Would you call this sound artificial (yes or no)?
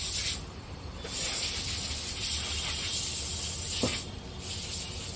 no